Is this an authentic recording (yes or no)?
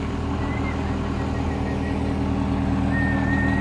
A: yes